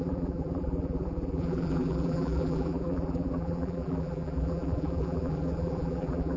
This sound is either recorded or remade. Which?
remade